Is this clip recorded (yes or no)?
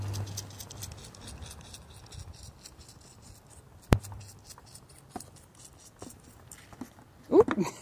yes